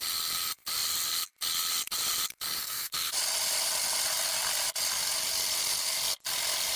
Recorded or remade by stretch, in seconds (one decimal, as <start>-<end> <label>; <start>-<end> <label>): 0.0-2.6 recorded; 2.6-3.1 remade; 3.1-6.8 recorded